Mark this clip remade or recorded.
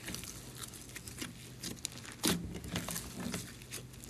recorded